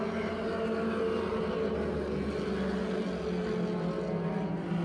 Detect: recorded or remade recorded